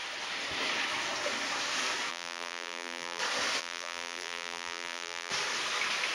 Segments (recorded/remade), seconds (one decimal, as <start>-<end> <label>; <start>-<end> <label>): 0.0-2.1 recorded; 2.1-3.2 remade; 3.2-3.6 recorded; 3.6-5.3 remade; 5.3-6.1 recorded